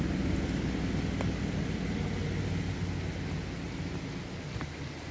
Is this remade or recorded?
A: recorded